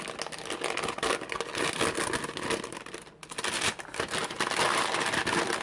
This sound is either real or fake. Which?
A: real